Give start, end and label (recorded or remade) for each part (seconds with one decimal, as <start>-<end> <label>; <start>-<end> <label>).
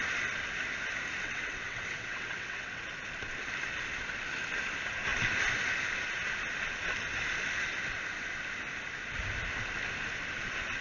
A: 0.0-1.2 recorded; 1.2-2.8 remade; 2.8-10.8 recorded